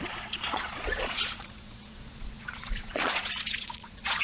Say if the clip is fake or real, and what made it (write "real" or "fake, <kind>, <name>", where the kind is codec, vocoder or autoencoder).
fake, vocoder, Vocos